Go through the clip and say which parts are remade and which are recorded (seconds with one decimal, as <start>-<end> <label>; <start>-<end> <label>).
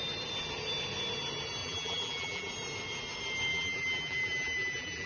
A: 0.0-1.6 recorded; 1.6-2.5 remade; 2.5-3.5 recorded; 3.5-5.1 remade